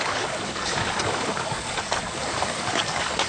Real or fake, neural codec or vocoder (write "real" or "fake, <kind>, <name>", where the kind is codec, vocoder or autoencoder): fake, codec, DAC